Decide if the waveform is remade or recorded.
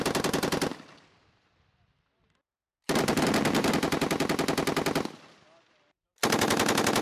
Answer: recorded